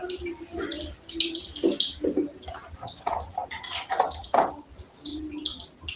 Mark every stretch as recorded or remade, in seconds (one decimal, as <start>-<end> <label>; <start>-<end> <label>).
0.0-0.7 remade; 0.7-4.3 recorded; 4.3-5.1 remade; 5.1-6.0 recorded